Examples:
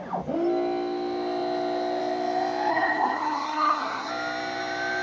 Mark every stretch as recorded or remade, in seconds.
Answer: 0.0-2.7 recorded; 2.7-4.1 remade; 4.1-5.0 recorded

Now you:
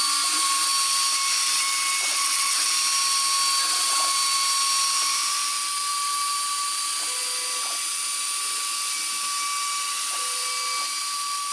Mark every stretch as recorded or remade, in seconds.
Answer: 0.0-2.1 recorded; 2.1-2.7 remade; 2.7-11.5 recorded

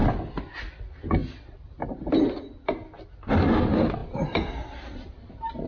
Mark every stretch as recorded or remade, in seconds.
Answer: 0.0-4.0 recorded; 4.0-5.3 remade; 5.3-5.7 recorded